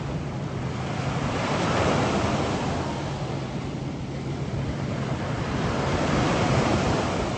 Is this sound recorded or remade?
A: remade